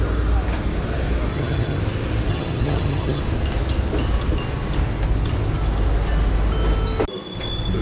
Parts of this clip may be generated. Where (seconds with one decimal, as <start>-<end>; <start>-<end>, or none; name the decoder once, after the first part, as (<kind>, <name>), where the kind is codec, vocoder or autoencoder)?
1.3-1.8 (vocoder, HiFi-GAN); 2.3-3.2